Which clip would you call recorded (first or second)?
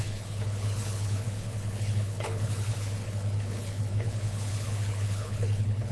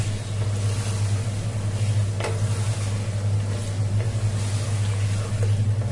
second